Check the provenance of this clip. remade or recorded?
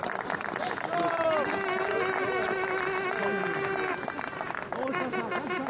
recorded